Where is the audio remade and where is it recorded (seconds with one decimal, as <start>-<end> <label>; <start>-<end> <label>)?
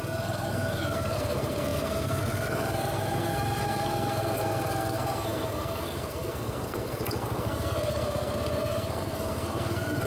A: 0.0-10.1 remade